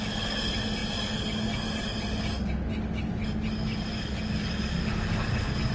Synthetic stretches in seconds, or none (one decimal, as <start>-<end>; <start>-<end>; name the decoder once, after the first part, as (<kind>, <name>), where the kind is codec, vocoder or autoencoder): none